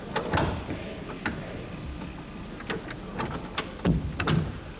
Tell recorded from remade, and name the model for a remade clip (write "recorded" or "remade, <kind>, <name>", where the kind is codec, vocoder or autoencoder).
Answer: recorded